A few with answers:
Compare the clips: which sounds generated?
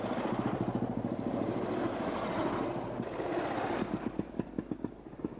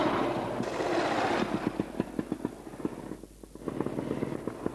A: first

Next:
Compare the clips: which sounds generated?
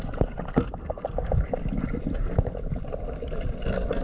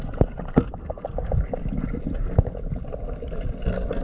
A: first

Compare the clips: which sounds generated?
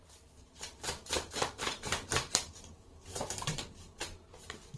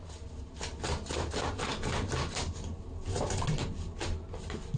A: first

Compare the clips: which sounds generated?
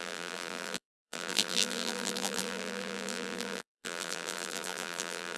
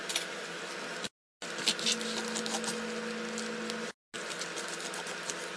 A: first